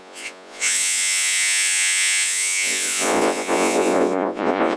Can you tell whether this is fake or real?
fake